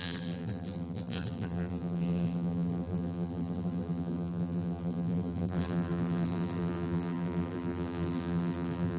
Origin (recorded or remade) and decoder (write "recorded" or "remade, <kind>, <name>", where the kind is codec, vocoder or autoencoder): remade, vocoder, BigVGAN v2